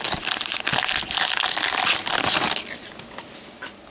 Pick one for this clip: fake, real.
real